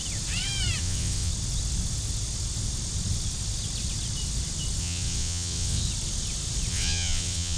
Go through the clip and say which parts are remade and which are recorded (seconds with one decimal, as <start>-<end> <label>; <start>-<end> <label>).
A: 0.0-0.8 recorded; 0.8-1.3 remade; 1.3-4.8 recorded; 4.8-5.8 remade; 5.8-6.7 recorded; 6.7-7.6 remade